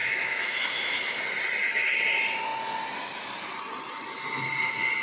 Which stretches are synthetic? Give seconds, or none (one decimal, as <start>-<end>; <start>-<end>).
0.0-1.1